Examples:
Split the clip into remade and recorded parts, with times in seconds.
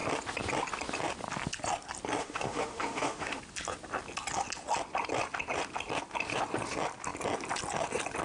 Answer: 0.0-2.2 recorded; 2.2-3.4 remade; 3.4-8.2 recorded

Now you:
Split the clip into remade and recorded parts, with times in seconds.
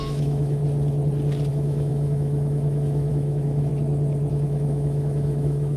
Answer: 0.0-0.6 remade; 0.6-1.5 recorded; 1.5-3.7 remade; 3.7-4.3 recorded; 4.3-5.8 remade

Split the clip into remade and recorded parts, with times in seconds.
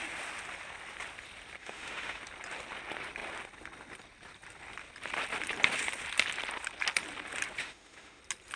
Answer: 0.0-1.6 recorded; 1.6-2.2 remade; 2.2-7.6 recorded; 7.6-8.2 remade; 8.2-8.6 recorded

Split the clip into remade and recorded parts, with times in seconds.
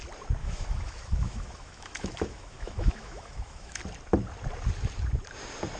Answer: 0.0-0.4 recorded; 0.4-3.8 remade; 3.8-5.8 recorded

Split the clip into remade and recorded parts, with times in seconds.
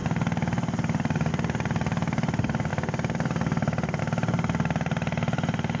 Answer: 0.0-5.8 recorded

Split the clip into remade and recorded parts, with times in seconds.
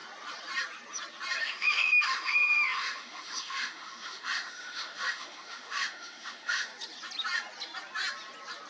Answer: 0.0-1.4 recorded; 1.4-6.7 remade; 6.7-8.7 recorded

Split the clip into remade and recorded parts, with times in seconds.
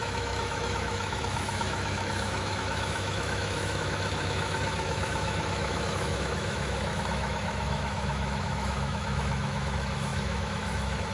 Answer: 0.0-11.1 remade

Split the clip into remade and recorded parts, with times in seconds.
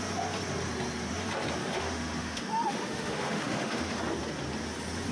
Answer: 0.0-1.6 recorded; 1.6-4.0 remade; 4.0-5.1 recorded